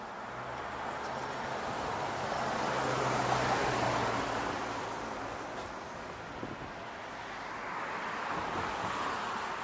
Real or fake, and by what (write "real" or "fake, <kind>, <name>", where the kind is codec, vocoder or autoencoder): real